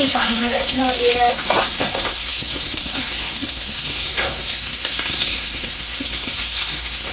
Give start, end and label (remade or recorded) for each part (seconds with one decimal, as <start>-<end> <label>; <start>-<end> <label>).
0.0-0.8 remade; 0.8-1.3 recorded; 1.3-7.1 remade